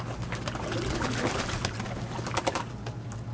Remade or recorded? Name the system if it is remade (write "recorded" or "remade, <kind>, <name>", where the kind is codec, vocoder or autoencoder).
recorded